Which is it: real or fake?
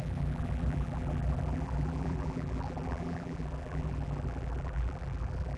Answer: fake